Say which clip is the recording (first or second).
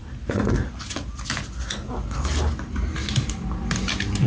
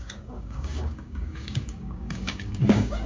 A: first